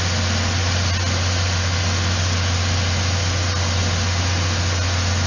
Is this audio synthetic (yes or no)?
no